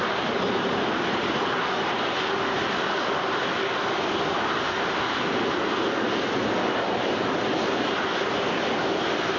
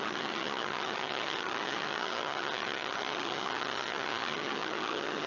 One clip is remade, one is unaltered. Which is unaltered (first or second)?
first